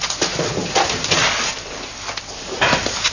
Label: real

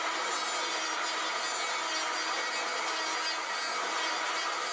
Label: real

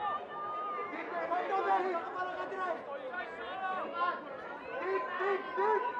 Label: real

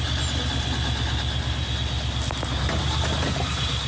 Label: real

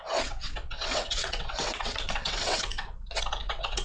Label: fake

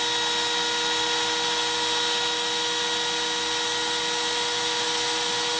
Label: real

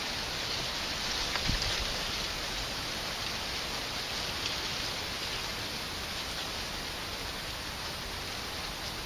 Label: real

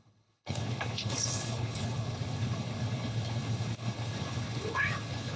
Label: fake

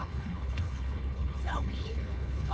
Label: fake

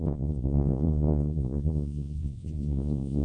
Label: fake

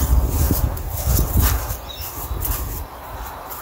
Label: real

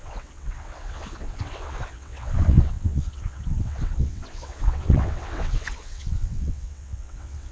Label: fake